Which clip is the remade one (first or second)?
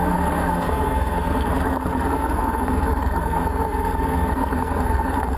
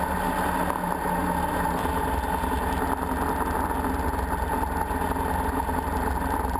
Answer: first